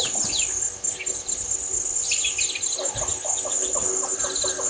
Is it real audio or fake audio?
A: real